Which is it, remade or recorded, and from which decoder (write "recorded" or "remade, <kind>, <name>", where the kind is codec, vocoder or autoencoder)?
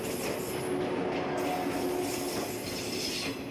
recorded